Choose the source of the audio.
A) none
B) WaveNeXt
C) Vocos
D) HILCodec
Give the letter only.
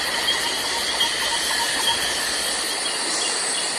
A